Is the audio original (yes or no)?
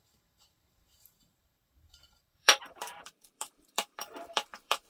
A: no